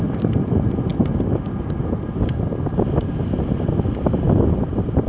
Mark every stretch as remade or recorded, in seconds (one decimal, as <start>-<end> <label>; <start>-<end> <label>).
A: 0.0-5.1 recorded